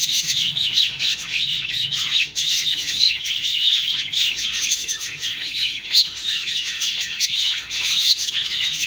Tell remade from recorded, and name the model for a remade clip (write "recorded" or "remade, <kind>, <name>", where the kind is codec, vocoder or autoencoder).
remade, autoencoder, DAC-VAE